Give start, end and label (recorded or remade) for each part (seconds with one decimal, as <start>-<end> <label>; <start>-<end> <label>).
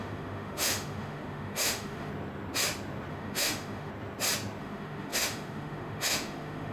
0.0-2.1 remade; 2.1-3.1 recorded; 3.1-3.9 remade; 3.9-4.6 recorded; 4.6-6.7 remade